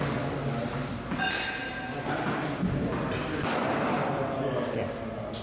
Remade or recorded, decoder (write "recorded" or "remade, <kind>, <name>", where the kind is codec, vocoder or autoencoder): recorded